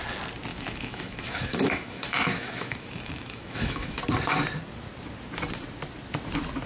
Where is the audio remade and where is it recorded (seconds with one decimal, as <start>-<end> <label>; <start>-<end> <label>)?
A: 0.0-0.5 recorded; 0.5-4.0 remade; 4.0-6.7 recorded